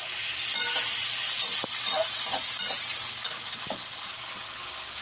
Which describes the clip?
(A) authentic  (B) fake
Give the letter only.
A